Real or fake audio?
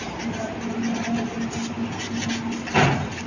real